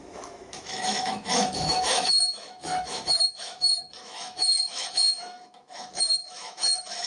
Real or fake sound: fake